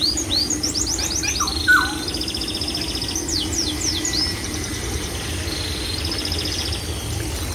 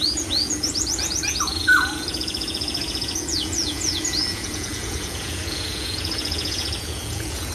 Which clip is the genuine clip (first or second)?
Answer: first